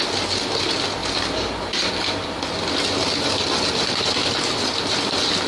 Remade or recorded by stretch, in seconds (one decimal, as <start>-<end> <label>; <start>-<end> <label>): 0.0-5.5 recorded